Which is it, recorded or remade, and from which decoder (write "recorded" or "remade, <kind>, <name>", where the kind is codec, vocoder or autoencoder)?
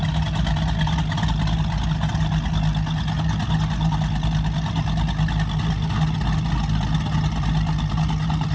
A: recorded